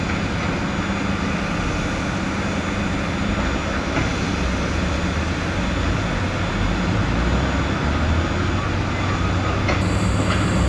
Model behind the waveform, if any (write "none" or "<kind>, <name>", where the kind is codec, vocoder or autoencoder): none